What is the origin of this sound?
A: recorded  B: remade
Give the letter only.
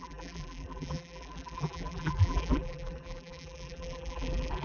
B